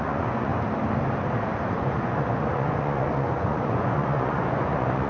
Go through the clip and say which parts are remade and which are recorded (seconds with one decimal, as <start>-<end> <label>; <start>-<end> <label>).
0.0-0.5 remade; 0.5-1.7 recorded; 1.7-5.1 remade